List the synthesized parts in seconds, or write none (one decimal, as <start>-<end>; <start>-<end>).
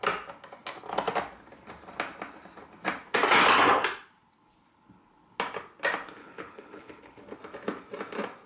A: 6.2-7.2